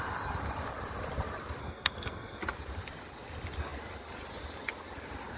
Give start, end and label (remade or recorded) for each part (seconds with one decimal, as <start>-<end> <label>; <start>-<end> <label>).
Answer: 0.0-1.6 recorded; 1.6-2.4 remade; 2.4-5.4 recorded